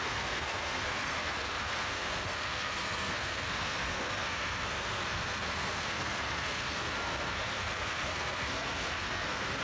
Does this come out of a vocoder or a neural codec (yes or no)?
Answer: yes